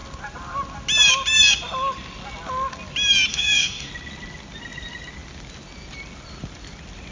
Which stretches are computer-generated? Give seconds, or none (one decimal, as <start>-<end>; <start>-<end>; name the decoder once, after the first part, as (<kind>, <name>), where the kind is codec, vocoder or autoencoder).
3.3-3.9 (autoencoder, DAC-VAE)